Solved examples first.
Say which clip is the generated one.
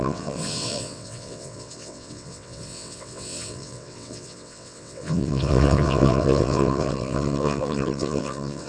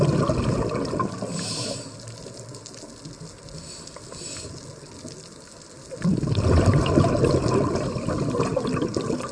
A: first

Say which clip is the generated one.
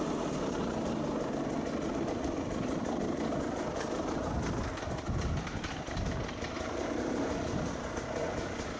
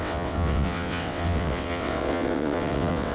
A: second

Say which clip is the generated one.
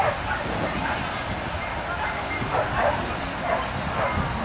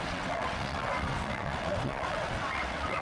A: second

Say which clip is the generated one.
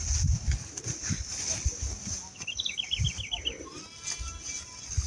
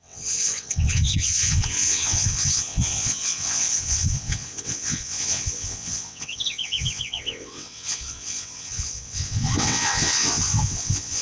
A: second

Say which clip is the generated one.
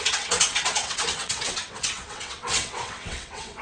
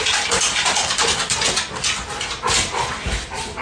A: first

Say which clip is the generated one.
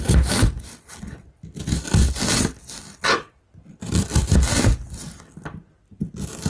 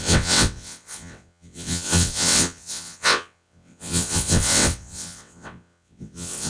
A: second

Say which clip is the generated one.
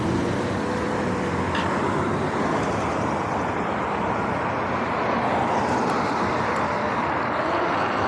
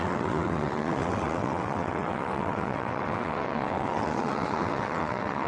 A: second